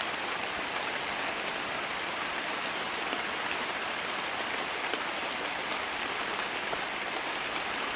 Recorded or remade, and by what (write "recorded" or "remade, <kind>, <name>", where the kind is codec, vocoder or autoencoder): recorded